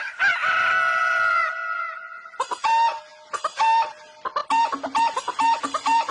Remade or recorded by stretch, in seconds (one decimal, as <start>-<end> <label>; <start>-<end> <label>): 0.0-0.4 recorded; 0.4-1.5 remade; 1.5-4.4 recorded; 4.4-6.1 remade

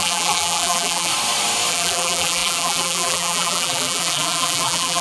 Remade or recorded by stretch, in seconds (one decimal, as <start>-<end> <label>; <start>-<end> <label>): 0.0-1.1 remade; 1.1-1.7 recorded; 1.7-5.0 remade